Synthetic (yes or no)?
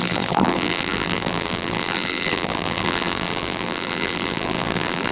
yes